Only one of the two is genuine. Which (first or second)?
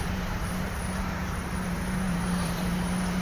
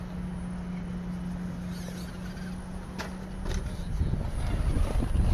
second